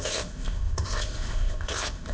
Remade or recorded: remade